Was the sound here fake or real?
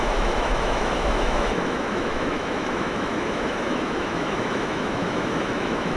fake